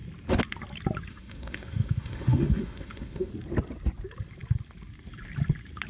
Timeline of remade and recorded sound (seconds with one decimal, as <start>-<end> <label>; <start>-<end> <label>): 0.0-1.1 recorded; 1.1-3.3 remade; 3.3-5.9 recorded